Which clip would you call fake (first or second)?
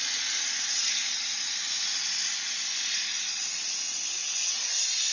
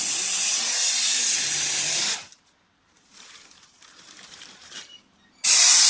second